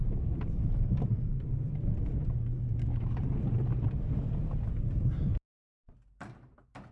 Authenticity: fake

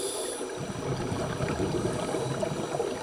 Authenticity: real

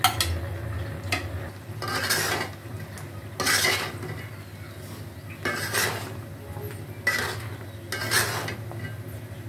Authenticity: real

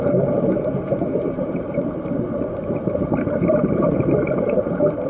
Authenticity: fake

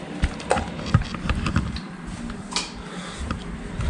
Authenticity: fake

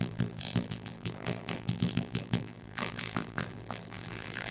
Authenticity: fake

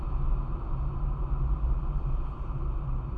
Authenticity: real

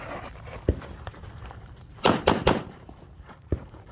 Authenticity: fake